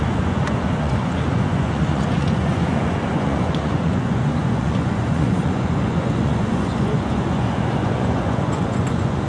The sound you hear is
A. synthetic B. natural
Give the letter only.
A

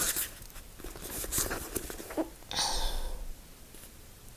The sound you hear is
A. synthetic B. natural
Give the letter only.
B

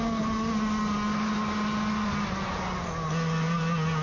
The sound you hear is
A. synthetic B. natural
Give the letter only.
B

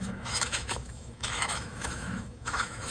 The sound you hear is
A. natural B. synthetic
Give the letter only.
B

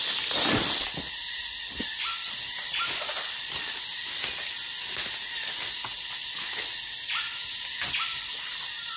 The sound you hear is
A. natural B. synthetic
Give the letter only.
A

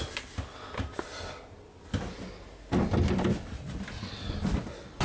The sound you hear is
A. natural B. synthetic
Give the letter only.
A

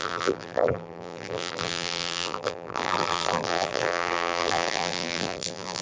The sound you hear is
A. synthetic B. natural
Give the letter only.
A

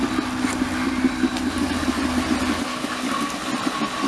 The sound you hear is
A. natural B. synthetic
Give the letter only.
A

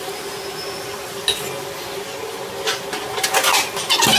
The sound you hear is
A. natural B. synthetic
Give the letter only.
A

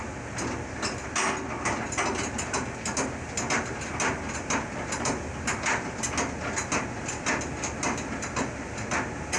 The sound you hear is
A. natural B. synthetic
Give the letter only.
A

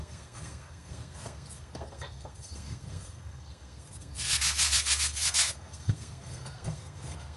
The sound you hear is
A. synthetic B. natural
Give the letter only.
A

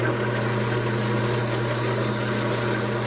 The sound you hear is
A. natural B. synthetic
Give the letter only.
A